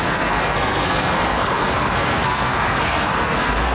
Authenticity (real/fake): fake